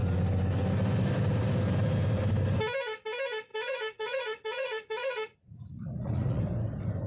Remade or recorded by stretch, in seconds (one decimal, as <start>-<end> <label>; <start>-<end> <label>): 0.0-3.5 recorded; 3.5-6.4 remade; 6.4-7.1 recorded